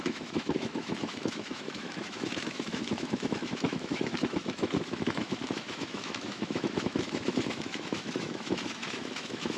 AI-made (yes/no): yes